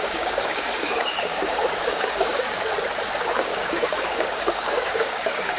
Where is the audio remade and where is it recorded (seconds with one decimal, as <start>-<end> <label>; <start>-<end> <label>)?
0.0-2.7 remade; 2.7-3.4 recorded; 3.4-5.6 remade